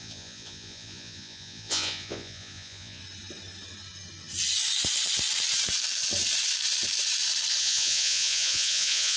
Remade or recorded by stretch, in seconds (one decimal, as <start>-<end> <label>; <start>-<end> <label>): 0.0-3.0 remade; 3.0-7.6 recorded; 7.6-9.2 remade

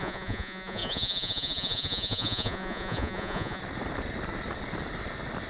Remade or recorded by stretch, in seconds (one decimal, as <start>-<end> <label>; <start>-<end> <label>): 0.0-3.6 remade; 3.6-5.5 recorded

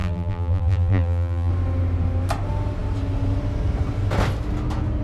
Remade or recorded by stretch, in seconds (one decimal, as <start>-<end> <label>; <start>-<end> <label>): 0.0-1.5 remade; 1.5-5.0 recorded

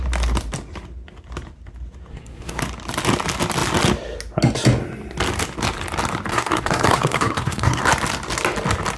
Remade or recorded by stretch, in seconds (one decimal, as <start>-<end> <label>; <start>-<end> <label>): 0.0-2.1 recorded; 2.1-2.6 remade; 2.6-6.3 recorded; 6.3-7.8 remade; 7.8-9.0 recorded

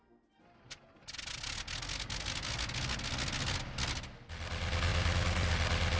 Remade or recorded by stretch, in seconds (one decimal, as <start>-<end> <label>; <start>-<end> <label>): 0.0-6.0 recorded